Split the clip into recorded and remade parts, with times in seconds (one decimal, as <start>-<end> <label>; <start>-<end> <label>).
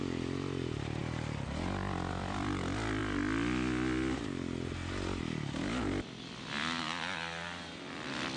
0.0-1.0 remade; 1.0-2.1 recorded; 2.1-3.0 remade; 3.0-6.8 recorded; 6.8-8.4 remade